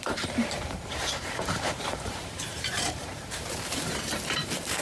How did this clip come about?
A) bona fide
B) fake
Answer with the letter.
B